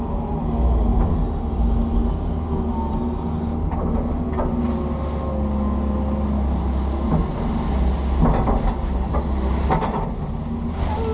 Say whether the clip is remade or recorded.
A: recorded